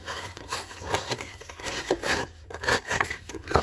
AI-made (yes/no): yes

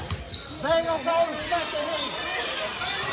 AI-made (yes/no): no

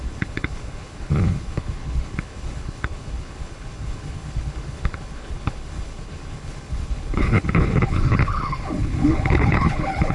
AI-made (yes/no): yes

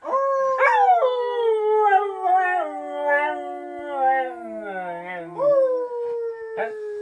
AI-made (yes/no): no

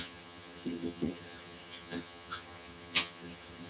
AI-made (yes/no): yes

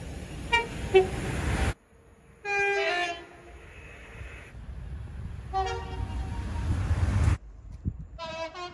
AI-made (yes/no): no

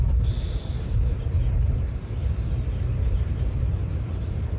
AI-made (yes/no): no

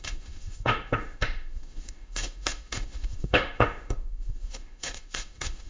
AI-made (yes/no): yes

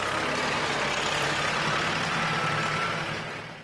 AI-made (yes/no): no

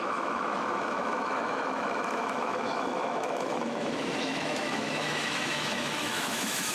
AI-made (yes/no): yes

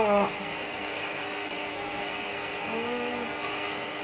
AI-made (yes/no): yes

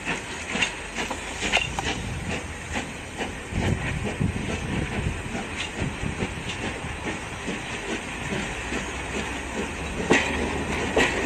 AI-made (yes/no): no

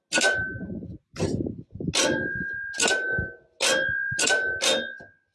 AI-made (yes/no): no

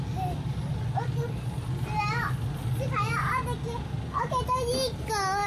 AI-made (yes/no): no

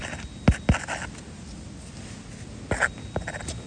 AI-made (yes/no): no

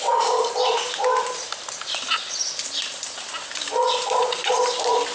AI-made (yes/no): no